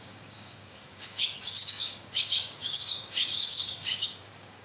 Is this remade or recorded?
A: remade